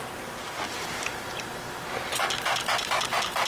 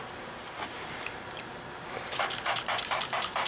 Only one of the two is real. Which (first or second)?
first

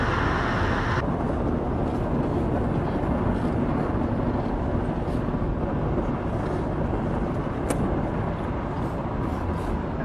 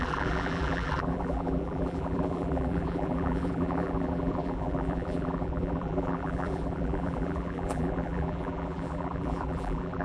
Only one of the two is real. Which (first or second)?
first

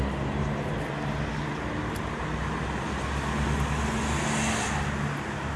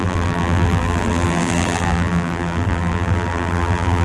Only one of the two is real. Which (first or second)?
first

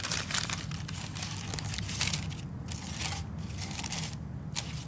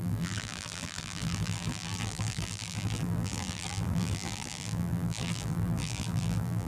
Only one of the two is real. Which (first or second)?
first